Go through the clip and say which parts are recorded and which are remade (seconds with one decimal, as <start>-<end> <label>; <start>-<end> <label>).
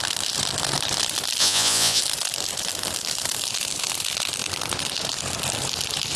0.0-1.4 recorded; 1.4-2.0 remade; 2.0-6.2 recorded